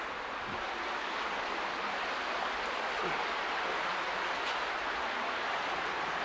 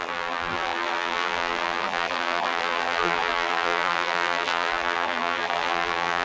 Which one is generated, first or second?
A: second